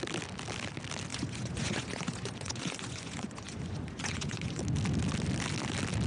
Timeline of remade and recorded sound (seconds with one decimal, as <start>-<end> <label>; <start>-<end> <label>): 0.0-1.1 recorded; 1.1-4.6 remade; 4.6-6.1 recorded